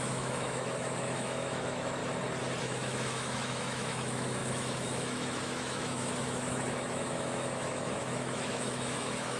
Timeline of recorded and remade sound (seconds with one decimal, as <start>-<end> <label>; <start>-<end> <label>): 0.0-2.0 remade; 2.0-2.6 recorded; 2.6-9.4 remade